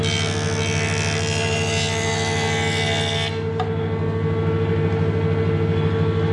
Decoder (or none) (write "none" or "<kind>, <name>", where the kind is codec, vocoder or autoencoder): none